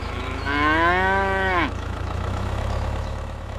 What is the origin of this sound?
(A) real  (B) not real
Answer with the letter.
B